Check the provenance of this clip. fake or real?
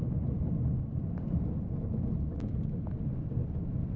real